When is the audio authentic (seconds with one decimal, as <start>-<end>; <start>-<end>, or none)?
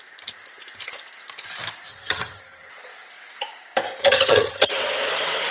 0.0-1.9; 2.7-4.0; 4.7-5.5